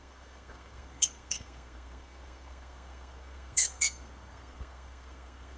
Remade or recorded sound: remade